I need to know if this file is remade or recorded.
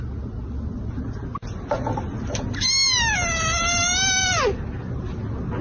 recorded